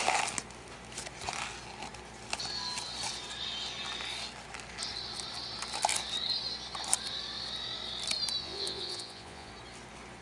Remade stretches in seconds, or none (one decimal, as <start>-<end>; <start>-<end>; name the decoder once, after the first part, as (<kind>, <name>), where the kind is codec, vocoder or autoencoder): 8.4-9.5 (vocoder, Vocos)